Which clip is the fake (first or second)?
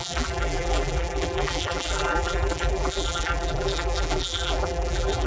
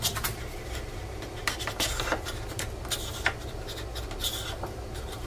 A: first